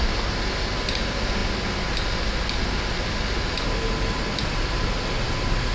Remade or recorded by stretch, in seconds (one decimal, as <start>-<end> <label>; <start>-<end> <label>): 0.0-5.7 recorded